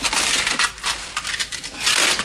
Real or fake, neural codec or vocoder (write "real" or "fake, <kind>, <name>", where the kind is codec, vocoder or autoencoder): real